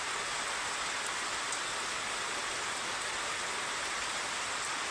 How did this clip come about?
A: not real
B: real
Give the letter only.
B